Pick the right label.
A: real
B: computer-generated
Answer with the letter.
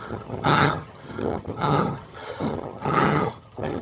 B